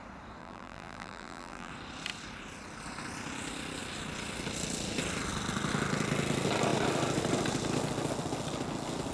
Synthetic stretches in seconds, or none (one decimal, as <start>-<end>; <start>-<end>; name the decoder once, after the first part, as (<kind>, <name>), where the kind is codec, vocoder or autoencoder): 0.4-1.7 (vocoder, BigVGAN v2)